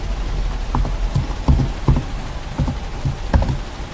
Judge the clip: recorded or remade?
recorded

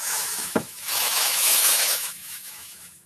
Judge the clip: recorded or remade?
remade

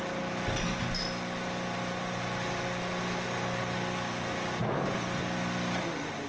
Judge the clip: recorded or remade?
recorded